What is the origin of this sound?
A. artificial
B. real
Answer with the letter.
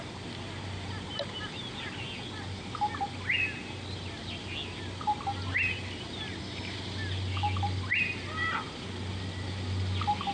B